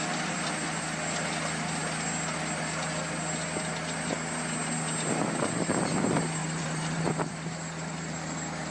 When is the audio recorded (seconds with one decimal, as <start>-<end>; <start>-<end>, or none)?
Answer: 0.0-6.4; 7.3-8.7